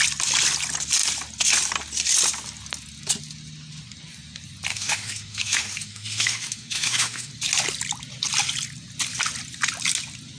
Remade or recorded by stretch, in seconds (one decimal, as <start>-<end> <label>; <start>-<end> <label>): 0.0-4.7 recorded; 4.7-7.3 remade; 7.3-10.4 recorded